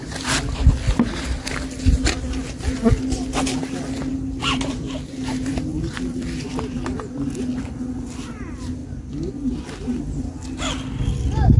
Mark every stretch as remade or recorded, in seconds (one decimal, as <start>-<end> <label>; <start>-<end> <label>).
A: 0.0-4.1 recorded; 4.1-8.3 remade; 8.3-8.8 recorded; 8.8-10.0 remade; 10.0-11.6 recorded